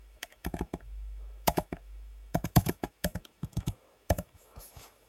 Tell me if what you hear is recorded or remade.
remade